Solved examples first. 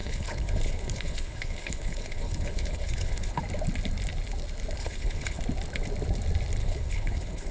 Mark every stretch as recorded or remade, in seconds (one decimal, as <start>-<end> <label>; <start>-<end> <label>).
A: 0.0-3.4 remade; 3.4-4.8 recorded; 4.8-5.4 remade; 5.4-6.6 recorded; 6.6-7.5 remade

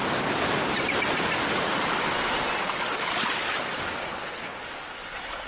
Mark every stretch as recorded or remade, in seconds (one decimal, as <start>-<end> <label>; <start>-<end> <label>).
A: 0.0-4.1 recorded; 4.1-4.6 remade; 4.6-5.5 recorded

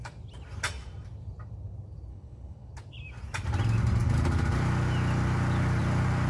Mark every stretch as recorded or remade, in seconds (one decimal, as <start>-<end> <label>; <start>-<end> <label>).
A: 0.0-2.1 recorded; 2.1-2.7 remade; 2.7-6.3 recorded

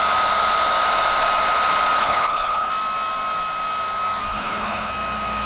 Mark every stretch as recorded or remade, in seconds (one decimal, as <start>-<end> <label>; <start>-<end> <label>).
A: 0.0-2.0 recorded; 2.0-2.7 remade; 2.7-4.3 recorded; 4.3-4.9 remade; 4.9-5.5 recorded

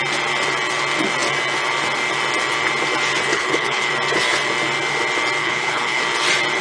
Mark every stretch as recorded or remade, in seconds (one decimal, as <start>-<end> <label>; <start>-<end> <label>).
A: 0.0-3.3 recorded; 3.3-3.9 remade; 3.9-5.4 recorded; 5.4-6.0 remade; 6.0-6.6 recorded

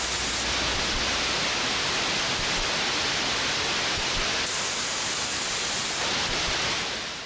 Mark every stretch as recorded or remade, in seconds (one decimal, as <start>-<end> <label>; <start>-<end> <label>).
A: 0.0-7.3 recorded